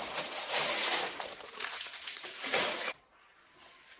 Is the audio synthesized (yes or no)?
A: yes